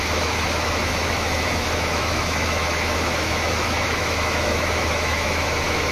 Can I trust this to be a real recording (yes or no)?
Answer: no